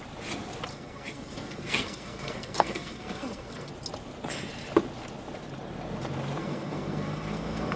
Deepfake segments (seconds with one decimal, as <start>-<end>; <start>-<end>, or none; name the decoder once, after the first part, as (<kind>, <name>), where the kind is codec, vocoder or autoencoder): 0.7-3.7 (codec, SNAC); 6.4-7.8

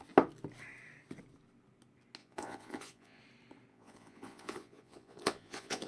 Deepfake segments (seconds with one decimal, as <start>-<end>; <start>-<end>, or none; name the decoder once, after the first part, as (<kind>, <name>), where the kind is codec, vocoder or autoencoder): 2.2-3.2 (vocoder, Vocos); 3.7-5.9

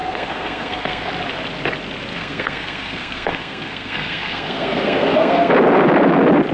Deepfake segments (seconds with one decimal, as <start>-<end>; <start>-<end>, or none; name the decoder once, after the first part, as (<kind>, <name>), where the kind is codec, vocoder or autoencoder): 0.0-1.1 (codec, SNAC); 2.1-5.5

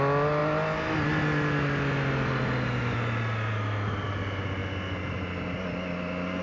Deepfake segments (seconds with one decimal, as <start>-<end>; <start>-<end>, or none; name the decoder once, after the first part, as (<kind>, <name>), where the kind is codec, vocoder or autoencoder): none

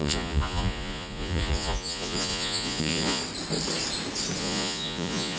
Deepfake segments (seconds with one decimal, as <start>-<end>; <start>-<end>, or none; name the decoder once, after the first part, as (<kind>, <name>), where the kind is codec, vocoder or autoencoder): 0.0-3.2 (vocoder, Vocos); 4.4-5.4

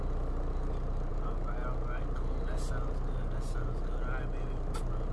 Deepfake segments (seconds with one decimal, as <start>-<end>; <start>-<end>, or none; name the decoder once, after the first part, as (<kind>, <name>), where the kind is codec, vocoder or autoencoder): none

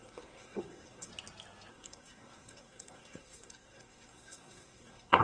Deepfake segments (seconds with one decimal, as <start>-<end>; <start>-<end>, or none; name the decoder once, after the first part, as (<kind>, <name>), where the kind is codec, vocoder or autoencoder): 0.0-1.1 (codec, SNAC); 1.7-5.2